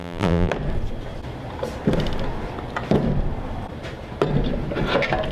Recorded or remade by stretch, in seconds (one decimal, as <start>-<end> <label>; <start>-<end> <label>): 0.0-0.5 remade; 0.5-5.3 recorded